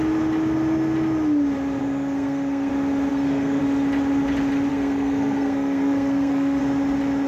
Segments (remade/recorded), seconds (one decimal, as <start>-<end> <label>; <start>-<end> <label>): 0.0-1.8 recorded; 1.8-2.7 remade; 2.7-3.1 recorded; 3.1-3.6 remade; 3.6-4.7 recorded; 4.7-6.6 remade; 6.6-7.3 recorded